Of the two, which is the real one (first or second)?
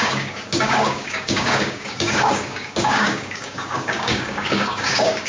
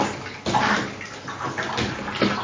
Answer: second